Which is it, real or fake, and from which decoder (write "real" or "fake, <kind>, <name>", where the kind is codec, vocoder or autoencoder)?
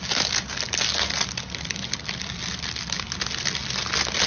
real